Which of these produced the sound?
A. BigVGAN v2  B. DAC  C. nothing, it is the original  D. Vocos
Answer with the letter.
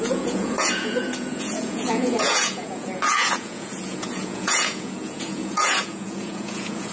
D